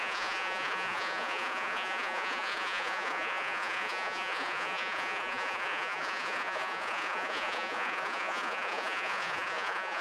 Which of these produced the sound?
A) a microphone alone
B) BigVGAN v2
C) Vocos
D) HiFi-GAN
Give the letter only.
C